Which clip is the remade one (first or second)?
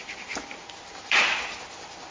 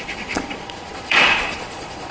second